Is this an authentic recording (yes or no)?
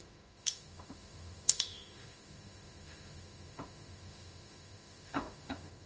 no